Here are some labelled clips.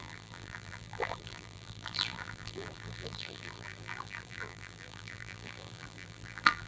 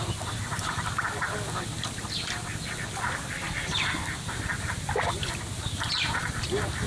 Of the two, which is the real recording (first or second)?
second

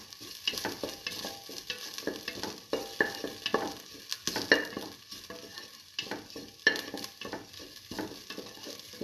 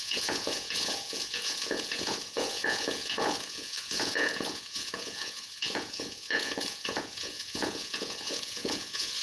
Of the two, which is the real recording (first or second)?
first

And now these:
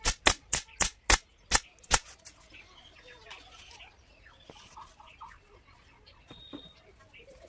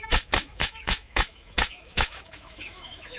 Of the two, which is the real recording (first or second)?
first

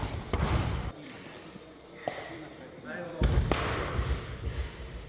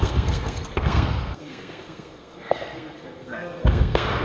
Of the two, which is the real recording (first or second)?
first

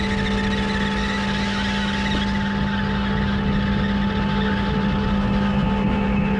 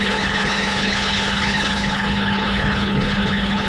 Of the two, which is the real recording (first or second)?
first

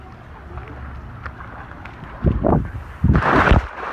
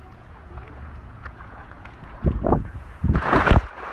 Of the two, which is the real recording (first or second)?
first